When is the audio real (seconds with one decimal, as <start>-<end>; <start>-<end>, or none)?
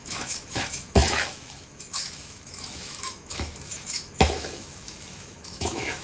none